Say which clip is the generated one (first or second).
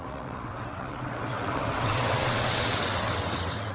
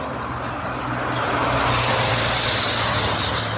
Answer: first